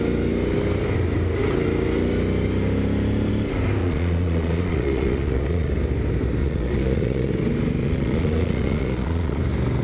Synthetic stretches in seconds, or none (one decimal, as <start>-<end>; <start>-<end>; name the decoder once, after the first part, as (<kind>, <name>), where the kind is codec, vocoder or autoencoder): 3.8-5.7 (vocoder, Vocos); 6.4-7.3; 7.8-9.4